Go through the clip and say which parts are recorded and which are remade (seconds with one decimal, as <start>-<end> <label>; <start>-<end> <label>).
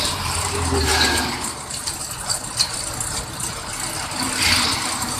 0.0-2.0 remade; 2.0-5.2 recorded